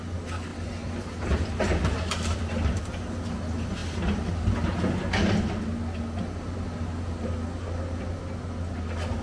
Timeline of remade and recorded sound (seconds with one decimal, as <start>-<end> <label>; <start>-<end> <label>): 0.0-0.5 recorded; 0.5-2.8 remade; 2.8-9.2 recorded